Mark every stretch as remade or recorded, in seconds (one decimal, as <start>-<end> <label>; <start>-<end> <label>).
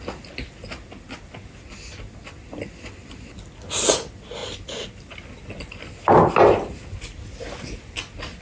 0.0-8.4 recorded